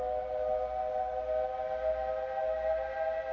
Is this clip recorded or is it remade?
recorded